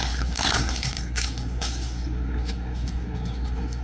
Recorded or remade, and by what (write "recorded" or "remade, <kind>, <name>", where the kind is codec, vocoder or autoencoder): remade, codec, SNAC